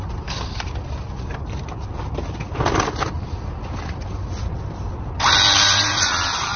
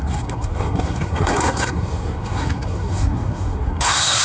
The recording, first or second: first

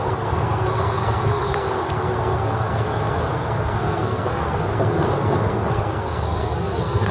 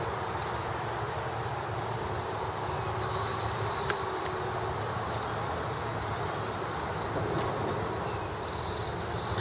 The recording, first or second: second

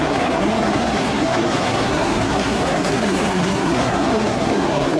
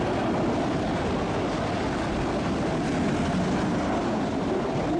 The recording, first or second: second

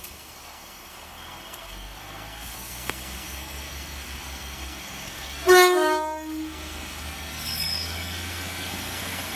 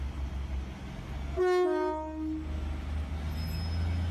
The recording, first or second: second